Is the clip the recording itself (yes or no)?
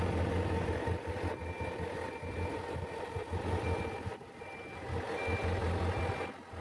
yes